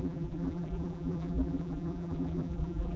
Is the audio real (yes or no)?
no